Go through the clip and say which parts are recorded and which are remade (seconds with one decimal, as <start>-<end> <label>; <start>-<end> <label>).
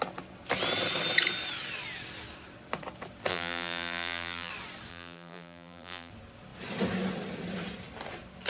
0.0-3.3 recorded; 3.3-4.5 remade; 4.5-4.9 recorded; 4.9-6.1 remade; 6.1-8.5 recorded